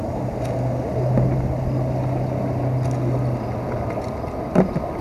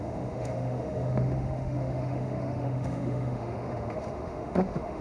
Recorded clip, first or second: first